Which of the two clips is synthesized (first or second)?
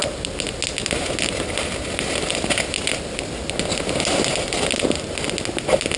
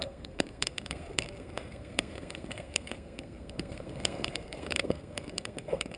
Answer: second